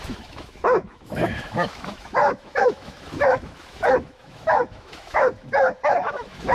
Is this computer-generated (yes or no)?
yes